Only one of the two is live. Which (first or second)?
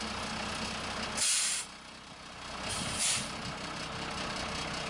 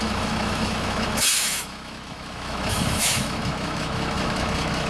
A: first